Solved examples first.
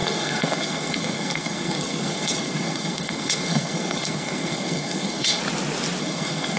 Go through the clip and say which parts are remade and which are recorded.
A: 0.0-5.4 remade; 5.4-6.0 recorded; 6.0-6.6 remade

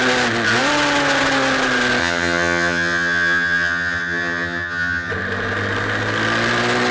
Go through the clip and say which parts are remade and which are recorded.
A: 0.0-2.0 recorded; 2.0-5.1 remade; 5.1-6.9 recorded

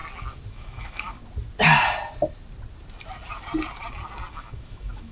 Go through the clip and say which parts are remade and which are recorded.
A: 0.0-0.5 recorded; 0.5-1.2 remade; 1.2-4.3 recorded; 4.3-5.1 remade